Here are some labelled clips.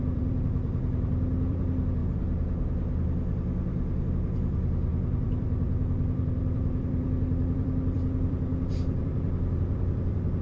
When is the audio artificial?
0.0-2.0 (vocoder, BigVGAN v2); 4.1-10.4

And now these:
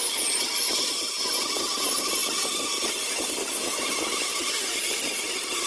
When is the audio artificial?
4.3-5.3 (vocoder, BigVGAN v2)

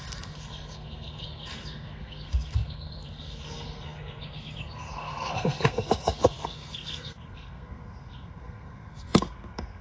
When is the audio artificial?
0.0-9.8 (codec, SNAC)